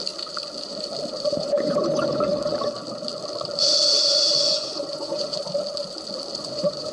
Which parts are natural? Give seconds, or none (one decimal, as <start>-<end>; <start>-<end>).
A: 0.0-1.2; 2.3-4.3; 5.4-6.4